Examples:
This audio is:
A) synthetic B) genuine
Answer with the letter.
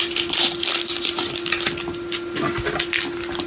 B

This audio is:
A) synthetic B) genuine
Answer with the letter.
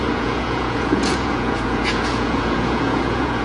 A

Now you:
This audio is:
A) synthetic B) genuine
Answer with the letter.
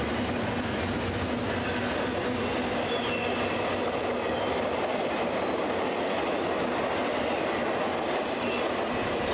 B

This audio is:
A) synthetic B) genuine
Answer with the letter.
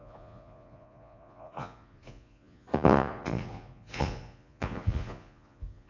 A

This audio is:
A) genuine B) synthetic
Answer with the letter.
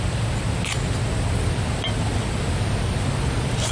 A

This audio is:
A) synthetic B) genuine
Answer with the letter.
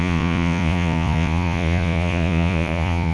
A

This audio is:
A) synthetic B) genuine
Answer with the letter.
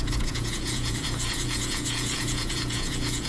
A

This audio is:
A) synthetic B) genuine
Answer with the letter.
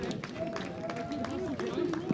B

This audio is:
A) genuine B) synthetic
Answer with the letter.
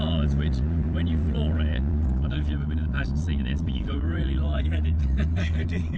B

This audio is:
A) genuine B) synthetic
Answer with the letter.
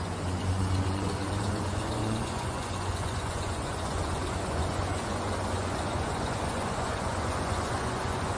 B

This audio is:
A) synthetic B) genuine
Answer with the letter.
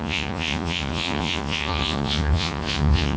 A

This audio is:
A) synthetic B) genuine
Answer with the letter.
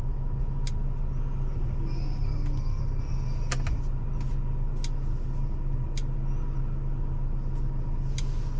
B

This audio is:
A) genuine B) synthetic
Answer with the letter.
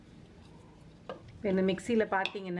A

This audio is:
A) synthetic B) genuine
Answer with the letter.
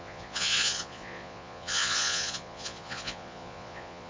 A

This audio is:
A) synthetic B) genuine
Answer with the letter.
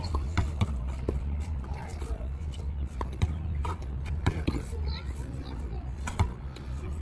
A